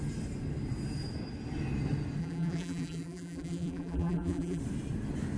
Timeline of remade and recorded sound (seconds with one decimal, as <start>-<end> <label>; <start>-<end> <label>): 0.0-2.2 recorded; 2.2-4.6 remade; 4.6-5.4 recorded